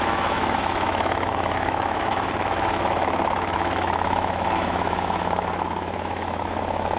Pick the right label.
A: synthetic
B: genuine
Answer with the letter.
A